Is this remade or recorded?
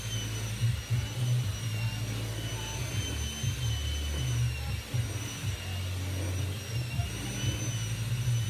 recorded